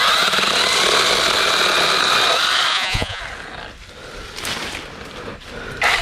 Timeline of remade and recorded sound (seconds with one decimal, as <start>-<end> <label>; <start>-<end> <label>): 0.0-2.7 recorded; 2.7-3.2 remade; 3.2-6.0 recorded